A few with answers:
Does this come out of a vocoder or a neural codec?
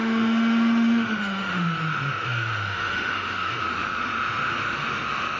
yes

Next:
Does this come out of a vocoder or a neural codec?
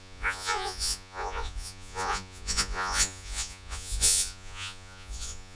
yes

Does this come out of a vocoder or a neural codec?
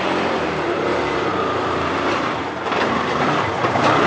yes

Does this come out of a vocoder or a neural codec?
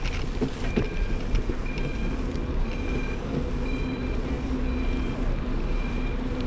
no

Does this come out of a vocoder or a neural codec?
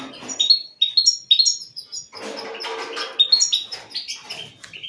no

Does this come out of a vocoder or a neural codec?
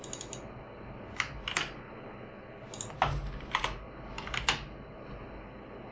no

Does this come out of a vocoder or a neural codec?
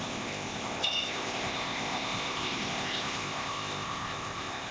yes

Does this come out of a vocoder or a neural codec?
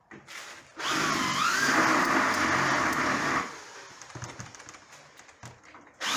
no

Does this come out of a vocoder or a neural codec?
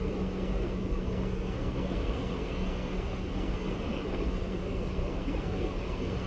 yes